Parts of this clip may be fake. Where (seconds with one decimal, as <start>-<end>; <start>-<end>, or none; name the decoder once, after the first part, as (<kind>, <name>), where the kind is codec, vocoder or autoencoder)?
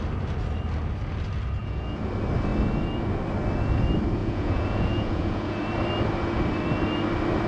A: 1.6-2.1 (vocoder, Vocos); 4.2-5.6